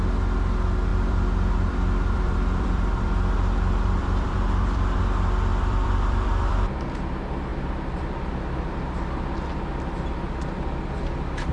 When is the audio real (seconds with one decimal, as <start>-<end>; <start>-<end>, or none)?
0.0-0.9; 5.0-5.5; 6.7-11.5